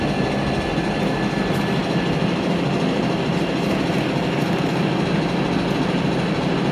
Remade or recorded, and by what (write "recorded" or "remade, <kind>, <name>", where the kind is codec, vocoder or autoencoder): recorded